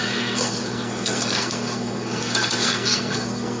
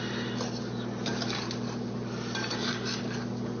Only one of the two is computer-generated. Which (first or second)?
first